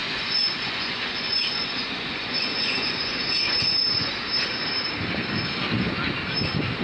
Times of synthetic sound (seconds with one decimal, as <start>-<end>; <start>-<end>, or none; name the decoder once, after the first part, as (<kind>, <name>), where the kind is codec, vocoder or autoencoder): 0.0-4.1 (vocoder, Vocos)